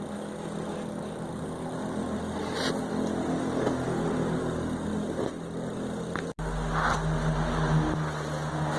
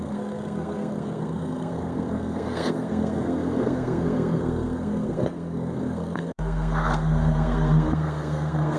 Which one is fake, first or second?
second